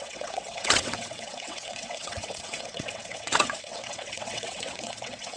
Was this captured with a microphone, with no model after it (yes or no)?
no